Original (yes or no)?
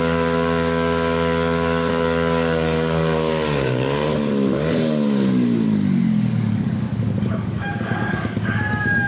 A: no